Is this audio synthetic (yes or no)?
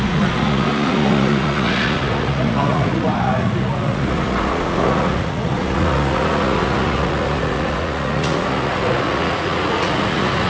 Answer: yes